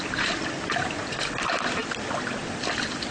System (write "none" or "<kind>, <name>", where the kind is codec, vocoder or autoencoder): none